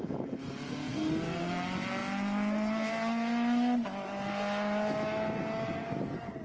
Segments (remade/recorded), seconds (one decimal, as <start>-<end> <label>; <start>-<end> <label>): 0.0-6.4 recorded